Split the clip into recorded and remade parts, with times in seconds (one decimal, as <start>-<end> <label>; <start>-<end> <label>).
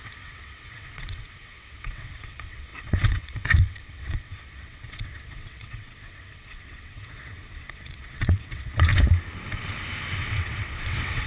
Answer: 0.0-8.9 remade; 8.9-10.2 recorded; 10.2-11.3 remade